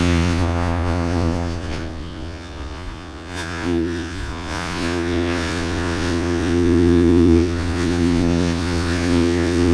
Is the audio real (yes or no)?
no